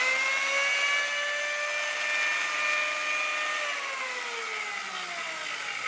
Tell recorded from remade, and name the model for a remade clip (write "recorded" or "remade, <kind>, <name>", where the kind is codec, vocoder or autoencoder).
recorded